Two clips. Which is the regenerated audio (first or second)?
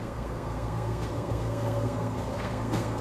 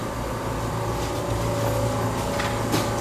first